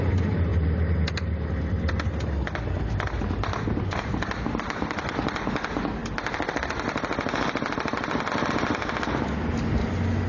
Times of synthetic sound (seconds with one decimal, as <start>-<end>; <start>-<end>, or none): none